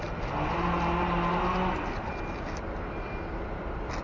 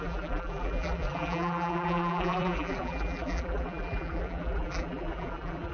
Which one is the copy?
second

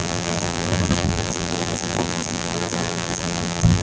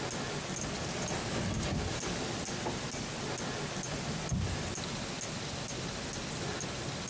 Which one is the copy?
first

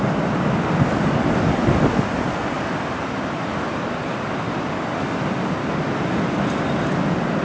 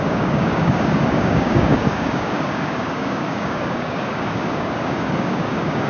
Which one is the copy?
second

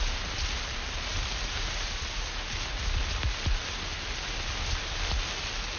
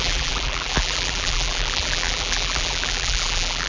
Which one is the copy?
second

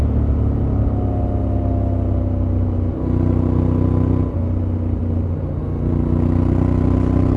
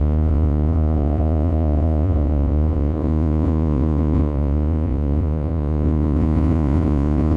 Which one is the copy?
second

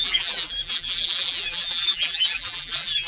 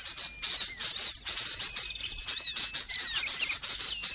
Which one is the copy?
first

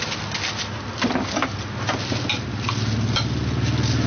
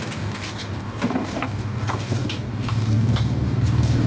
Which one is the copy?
second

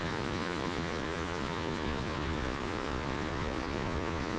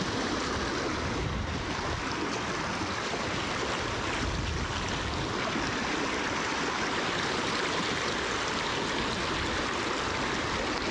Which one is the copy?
first